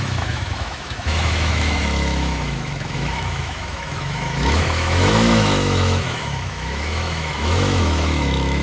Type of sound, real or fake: fake